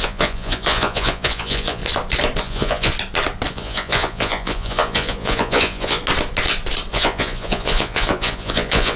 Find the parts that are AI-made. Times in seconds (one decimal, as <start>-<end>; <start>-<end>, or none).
0.0-1.8; 2.4-2.9; 3.5-6.0; 6.9-9.0